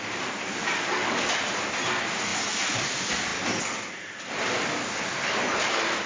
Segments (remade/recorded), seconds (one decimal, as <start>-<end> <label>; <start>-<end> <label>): 0.0-0.6 recorded; 0.6-1.3 remade; 1.3-6.1 recorded